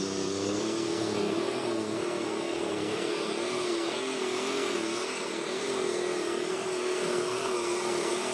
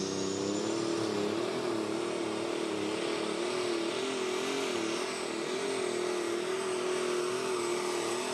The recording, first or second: second